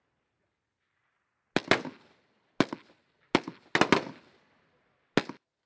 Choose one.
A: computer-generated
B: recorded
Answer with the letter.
B